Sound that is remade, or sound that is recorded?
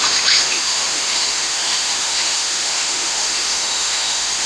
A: remade